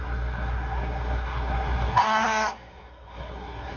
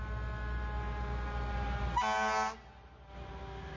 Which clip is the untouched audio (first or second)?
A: second